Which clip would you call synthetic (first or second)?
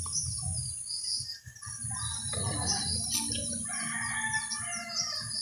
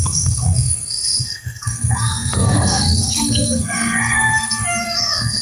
second